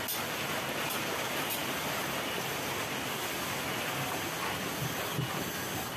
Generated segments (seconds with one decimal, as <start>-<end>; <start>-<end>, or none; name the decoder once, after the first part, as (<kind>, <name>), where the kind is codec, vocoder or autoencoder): 1.6-2.6 (vocoder, BigVGAN v2)